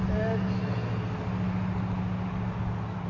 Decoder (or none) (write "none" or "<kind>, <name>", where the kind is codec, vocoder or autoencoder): none